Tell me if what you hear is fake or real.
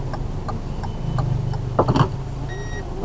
real